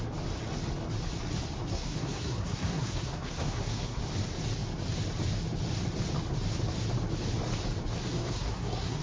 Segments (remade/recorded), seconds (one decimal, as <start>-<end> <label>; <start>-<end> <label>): 0.0-1.7 recorded; 1.7-4.0 remade; 4.0-8.1 recorded; 8.1-9.0 remade